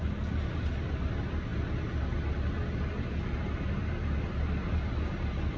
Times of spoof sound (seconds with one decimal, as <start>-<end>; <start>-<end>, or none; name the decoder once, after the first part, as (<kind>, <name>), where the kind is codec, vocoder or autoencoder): none